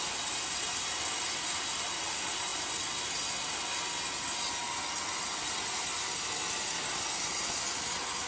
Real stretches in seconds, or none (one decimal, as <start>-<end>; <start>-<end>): 0.0-8.3